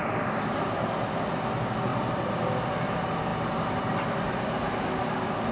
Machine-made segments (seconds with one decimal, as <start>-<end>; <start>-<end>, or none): none